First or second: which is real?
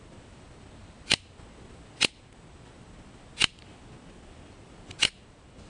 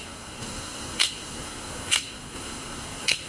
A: first